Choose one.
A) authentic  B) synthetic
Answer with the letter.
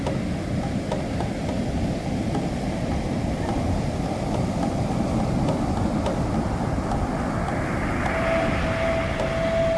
A